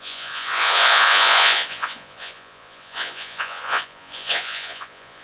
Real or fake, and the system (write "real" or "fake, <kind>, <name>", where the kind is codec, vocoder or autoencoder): fake, vocoder, Vocos